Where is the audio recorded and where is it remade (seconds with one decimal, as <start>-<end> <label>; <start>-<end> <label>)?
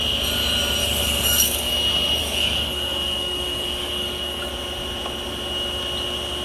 0.0-0.8 recorded; 0.8-1.7 remade; 1.7-2.2 recorded; 2.2-4.5 remade; 4.5-6.4 recorded